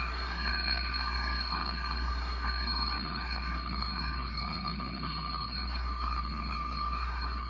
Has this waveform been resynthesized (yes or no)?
yes